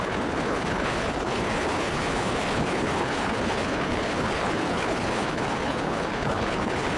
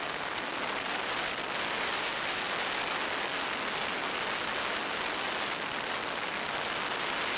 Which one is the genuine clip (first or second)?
second